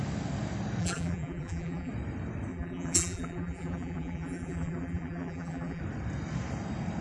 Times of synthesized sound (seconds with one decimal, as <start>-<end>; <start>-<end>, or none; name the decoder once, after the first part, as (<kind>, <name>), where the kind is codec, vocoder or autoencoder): 0.8-1.9 (vocoder, BigVGAN v2); 2.5-5.8